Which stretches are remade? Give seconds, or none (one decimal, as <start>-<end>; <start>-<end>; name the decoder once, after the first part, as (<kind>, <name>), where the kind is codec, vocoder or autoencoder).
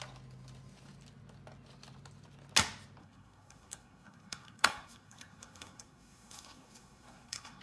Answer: 3.0-7.6 (codec, SNAC)